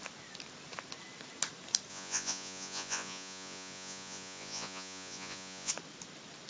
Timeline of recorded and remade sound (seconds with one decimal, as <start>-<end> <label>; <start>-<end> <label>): 0.0-1.9 recorded; 1.9-5.7 remade; 5.7-6.5 recorded